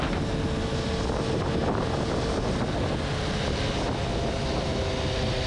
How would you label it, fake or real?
real